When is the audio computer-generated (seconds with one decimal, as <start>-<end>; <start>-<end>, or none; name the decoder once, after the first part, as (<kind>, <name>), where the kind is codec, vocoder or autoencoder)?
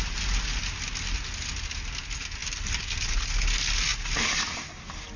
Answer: none